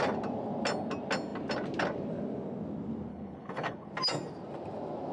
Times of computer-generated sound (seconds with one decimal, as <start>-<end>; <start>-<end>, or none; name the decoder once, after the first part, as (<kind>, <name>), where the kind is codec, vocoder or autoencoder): 3.1-3.9 (codec, HILCodec)